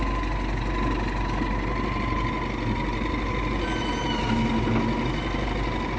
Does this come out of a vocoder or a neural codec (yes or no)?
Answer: no